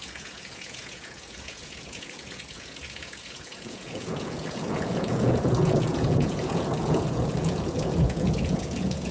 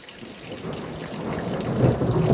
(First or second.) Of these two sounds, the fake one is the first